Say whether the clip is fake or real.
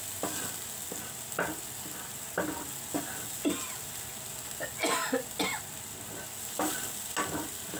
real